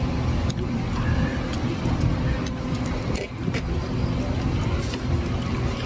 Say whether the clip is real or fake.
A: real